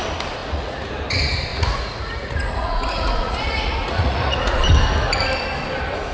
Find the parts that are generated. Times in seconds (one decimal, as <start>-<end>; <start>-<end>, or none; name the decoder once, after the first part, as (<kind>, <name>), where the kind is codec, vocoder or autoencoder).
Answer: 0.4-0.9 (vocoder, Vocos); 1.5-4.7